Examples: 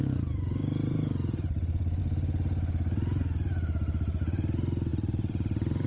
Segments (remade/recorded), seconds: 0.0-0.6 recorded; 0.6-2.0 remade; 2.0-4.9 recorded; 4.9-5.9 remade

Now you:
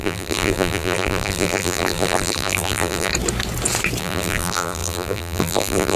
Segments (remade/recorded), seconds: 0.0-3.1 remade; 3.1-4.0 recorded; 4.0-6.0 remade

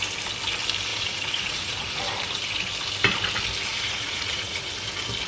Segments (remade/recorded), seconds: 0.0-0.9 recorded; 0.9-2.0 remade; 2.0-3.7 recorded; 3.7-4.7 remade; 4.7-5.3 recorded

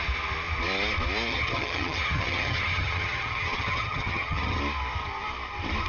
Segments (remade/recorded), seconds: 0.0-1.3 recorded; 1.3-4.6 remade; 4.6-5.9 recorded

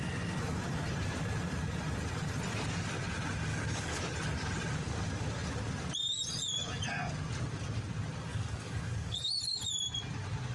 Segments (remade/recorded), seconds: 0.0-3.5 recorded; 3.5-4.0 remade; 4.0-8.3 recorded; 8.3-9.3 remade; 9.3-10.5 recorded

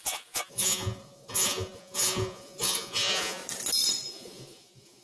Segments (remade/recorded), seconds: 0.0-3.4 remade; 3.4-4.1 recorded; 4.1-5.0 remade